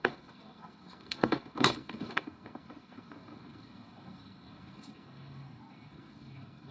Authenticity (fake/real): fake